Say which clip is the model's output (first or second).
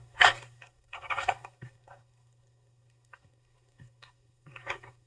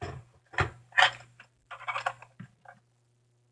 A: first